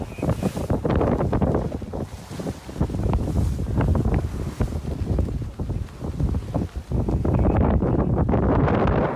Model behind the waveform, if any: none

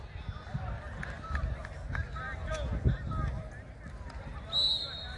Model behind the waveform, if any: none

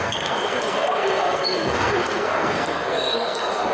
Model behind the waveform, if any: codec, SNAC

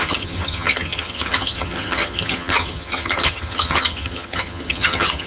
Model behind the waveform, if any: vocoder, HiFi-GAN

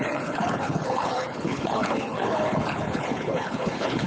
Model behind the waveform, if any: codec, HILCodec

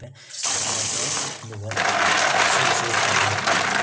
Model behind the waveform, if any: none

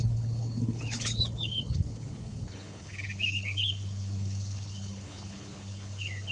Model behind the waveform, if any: codec, HILCodec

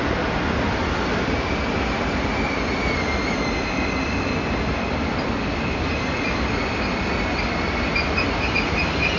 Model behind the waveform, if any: none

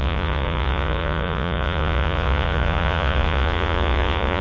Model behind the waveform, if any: vocoder, Vocos